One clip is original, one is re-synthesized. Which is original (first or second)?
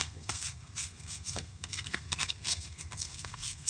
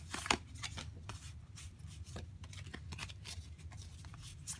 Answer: second